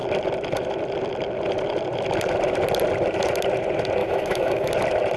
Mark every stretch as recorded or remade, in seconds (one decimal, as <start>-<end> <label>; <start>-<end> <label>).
0.0-4.0 recorded; 4.0-4.7 remade; 4.7-5.2 recorded